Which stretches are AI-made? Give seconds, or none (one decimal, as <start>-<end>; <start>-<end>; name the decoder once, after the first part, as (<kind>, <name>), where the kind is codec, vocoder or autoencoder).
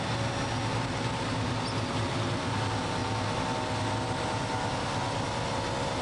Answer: 0.7-1.5 (vocoder, BigVGAN v2); 3.0-3.5